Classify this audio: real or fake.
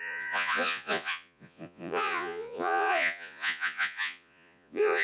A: fake